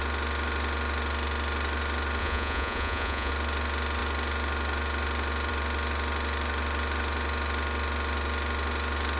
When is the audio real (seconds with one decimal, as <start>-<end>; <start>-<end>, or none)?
0.0-2.2; 3.3-9.2